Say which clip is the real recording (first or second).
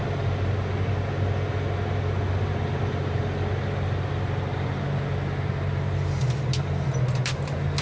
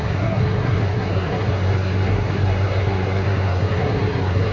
first